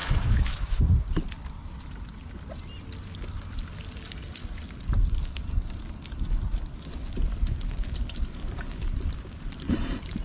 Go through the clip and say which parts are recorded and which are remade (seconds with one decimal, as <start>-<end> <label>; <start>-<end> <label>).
0.0-0.8 remade; 0.8-10.2 recorded